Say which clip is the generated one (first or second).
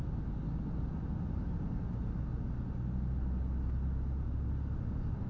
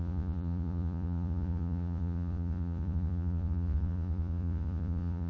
second